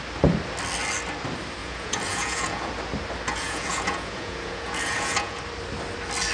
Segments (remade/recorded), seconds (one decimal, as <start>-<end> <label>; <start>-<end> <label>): 0.0-1.6 recorded; 1.6-2.7 remade; 2.7-3.3 recorded; 3.3-5.4 remade; 5.4-6.3 recorded